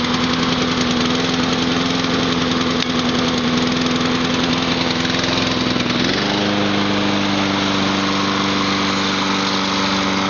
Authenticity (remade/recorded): recorded